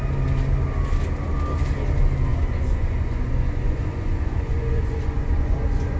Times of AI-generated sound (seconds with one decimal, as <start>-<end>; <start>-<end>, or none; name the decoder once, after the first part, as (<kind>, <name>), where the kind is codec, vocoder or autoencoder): 2.3-6.0 (vocoder, Vocos)